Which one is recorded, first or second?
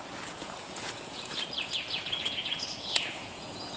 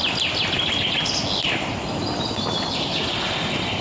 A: second